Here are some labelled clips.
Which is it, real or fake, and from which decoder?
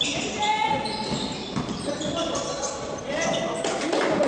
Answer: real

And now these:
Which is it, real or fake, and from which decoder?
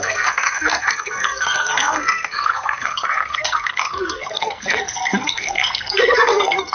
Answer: fake, codec, SNAC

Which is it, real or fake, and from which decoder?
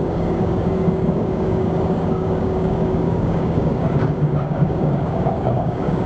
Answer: fake, codec, DAC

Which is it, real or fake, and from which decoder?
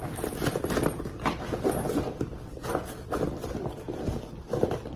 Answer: fake, vocoder, BigVGAN v2